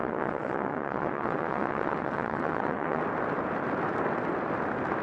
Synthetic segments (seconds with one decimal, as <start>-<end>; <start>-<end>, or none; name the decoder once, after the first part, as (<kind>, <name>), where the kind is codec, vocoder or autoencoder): 0.0-3.0 (vocoder, WaveNeXt)